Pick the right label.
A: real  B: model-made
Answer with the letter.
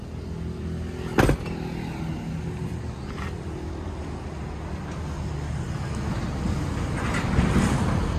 A